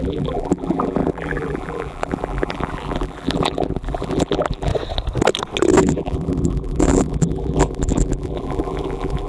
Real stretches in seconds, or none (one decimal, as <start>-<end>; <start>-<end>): 4.7-5.8